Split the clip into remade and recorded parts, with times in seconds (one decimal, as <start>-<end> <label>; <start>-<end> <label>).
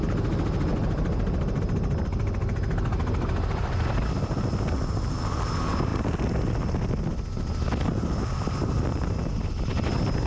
0.0-10.3 recorded